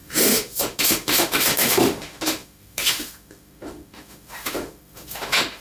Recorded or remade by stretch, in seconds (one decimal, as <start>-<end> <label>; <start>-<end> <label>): 0.0-5.6 remade